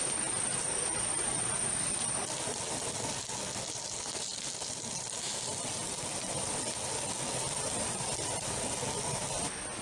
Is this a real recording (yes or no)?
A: yes